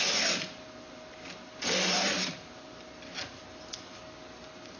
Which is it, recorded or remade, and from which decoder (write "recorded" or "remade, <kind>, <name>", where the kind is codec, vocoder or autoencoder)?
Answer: recorded